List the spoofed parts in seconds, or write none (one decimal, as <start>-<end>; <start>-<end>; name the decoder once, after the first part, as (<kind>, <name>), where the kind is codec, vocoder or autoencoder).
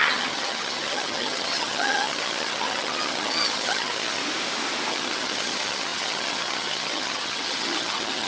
0.0-4.2 (vocoder, HiFi-GAN); 4.9-8.3